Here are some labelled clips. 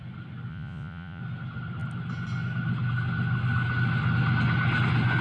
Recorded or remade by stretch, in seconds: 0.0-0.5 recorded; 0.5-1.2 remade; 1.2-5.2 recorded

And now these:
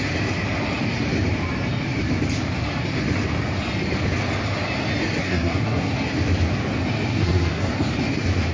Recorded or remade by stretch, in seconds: 0.0-5.2 recorded; 5.2-5.9 remade; 5.9-7.1 recorded; 7.1-7.7 remade; 7.7-8.5 recorded

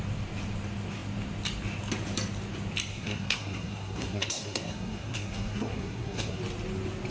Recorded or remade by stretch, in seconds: 0.0-2.9 recorded; 2.9-6.4 remade; 6.4-7.1 recorded

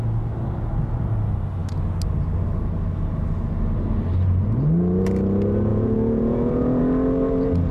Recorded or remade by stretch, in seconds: 0.0-5.7 recorded; 5.7-6.8 remade; 6.8-7.7 recorded